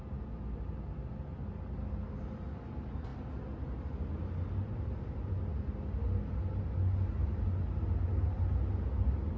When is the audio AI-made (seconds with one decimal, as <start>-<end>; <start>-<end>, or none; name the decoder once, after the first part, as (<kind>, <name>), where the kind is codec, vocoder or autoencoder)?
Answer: none

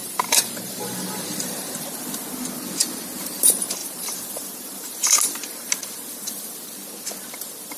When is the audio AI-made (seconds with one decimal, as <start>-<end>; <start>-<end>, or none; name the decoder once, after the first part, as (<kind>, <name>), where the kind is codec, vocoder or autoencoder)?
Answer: 0.0-1.7 (vocoder, BigVGAN v2); 3.8-5.7

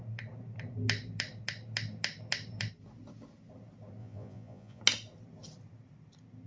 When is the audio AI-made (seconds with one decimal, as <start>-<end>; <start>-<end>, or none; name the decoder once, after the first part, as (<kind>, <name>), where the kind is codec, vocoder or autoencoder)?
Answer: 4.0-4.8 (vocoder, Vocos)

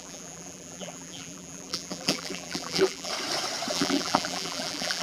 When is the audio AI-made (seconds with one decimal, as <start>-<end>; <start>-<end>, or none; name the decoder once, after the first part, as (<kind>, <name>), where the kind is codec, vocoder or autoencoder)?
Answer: 0.0-3.1 (vocoder, BigVGAN v2); 3.7-5.0